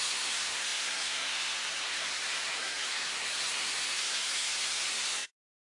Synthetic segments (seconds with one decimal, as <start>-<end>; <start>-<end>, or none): 0.0-5.8